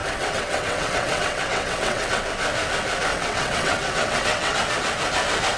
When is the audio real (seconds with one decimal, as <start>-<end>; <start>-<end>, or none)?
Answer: 2.2-3.1; 4.6-5.6